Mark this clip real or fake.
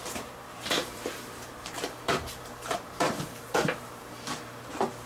fake